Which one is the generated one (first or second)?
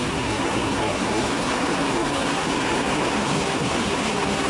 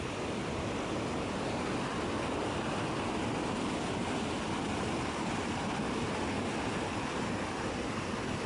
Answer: first